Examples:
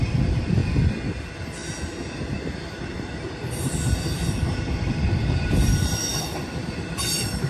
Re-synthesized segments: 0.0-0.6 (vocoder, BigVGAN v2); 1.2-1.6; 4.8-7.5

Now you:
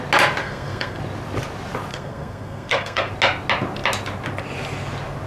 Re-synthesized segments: 0.4-1.0 (codec, SNAC); 1.9-3.1

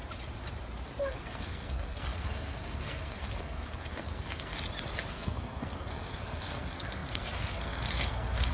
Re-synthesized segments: 1.0-4.5 (codec, SNAC); 5.1-8.5

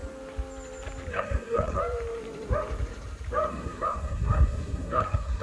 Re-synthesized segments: 1.1-1.8 (codec, SNAC); 3.5-5.4

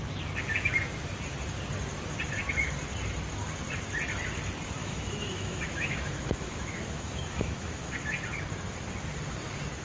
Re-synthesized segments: 4.8-7.9 (autoencoder, DAC-VAE)

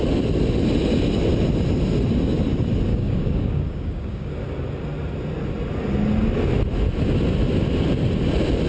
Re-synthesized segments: 2.9-4.3 (codec, DAC)

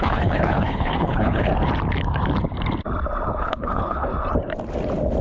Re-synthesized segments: 0.0-1.5 (codec, HILCodec); 3.4-4.1

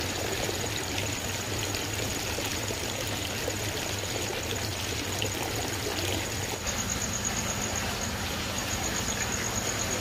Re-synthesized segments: none